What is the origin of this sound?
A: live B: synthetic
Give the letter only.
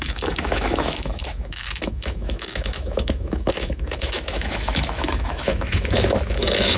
B